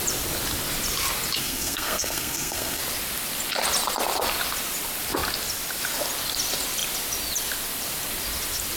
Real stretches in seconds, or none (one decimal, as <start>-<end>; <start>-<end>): 0.0-1.4; 2.8-8.8